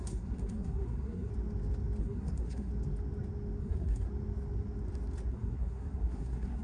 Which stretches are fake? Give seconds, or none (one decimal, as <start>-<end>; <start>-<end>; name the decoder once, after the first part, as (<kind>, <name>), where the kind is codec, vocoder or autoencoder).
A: 0.0-1.3 (codec, SNAC); 2.0-2.7; 3.6-4.1; 5.3-6.6